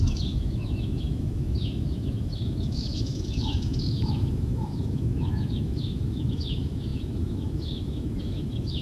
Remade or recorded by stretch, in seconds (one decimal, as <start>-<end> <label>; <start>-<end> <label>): 0.0-8.8 remade